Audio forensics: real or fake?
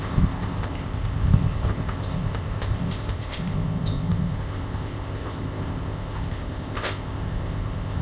fake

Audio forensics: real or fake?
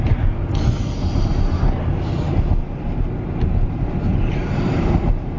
real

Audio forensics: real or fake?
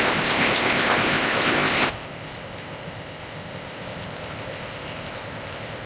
fake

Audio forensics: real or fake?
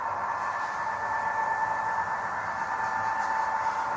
real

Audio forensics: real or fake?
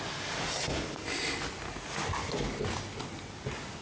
real